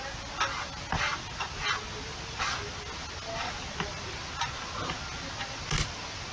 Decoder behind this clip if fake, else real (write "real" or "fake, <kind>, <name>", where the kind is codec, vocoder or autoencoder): real